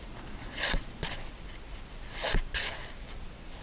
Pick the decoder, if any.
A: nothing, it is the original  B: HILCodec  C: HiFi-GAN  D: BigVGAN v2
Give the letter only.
A